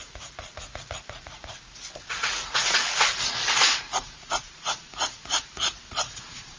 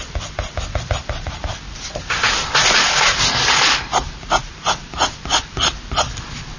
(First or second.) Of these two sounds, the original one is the second